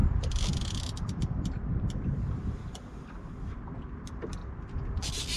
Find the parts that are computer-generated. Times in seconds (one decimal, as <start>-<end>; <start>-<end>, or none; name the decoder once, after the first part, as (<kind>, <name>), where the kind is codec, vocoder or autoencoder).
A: 0.0-4.4 (vocoder, BigVGAN v2)